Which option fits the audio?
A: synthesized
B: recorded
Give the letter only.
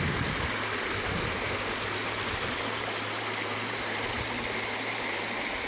B